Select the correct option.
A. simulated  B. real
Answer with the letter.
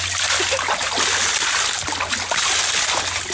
B